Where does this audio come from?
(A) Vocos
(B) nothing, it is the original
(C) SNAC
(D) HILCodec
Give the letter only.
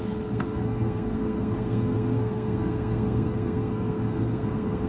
C